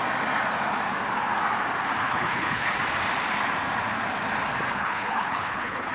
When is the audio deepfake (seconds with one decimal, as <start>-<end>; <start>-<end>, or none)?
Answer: 2.0-2.7; 4.8-5.9